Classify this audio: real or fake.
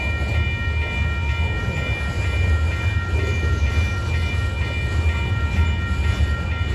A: real